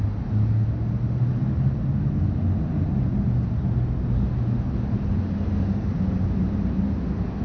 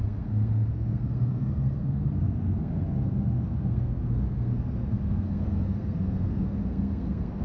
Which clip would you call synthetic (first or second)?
second